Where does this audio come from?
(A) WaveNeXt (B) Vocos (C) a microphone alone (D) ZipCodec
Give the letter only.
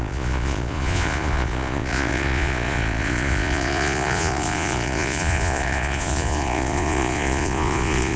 B